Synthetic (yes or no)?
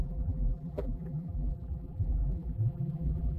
yes